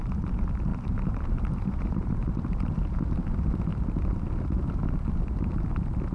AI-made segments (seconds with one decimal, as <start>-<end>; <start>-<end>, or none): 0.7-2.8